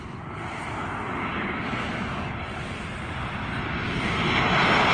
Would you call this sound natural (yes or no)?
yes